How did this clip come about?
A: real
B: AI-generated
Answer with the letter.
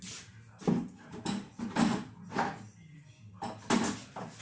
A